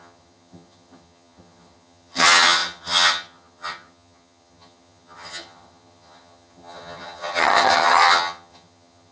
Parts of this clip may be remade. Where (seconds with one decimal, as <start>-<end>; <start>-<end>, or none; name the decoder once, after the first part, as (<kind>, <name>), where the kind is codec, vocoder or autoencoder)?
0.0-9.1 (vocoder, HiFi-GAN)